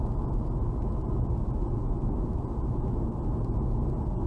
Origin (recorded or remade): recorded